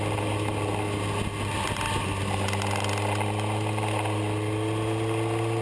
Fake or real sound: real